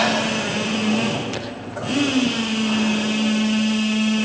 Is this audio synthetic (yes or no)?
no